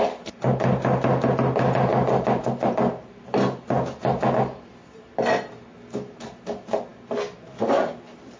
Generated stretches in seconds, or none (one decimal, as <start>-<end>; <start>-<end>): none